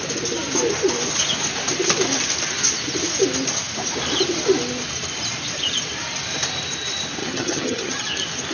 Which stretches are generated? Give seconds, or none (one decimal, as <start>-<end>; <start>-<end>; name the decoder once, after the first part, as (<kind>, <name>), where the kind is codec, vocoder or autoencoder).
7.2-8.1 (vocoder, HiFi-GAN)